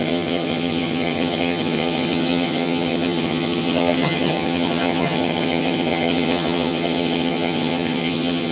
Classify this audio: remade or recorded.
remade